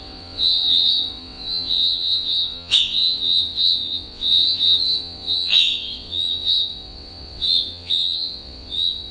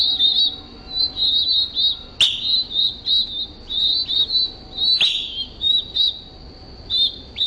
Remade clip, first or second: first